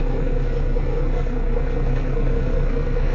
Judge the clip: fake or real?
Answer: fake